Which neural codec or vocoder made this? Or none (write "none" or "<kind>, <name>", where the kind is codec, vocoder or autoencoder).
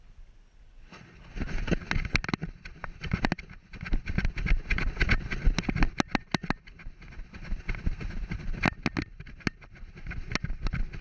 none